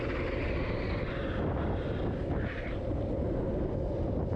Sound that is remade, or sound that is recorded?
recorded